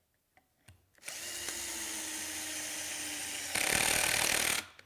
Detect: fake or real real